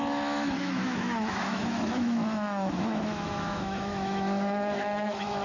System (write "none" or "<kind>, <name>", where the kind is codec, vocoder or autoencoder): autoencoder, DAC-VAE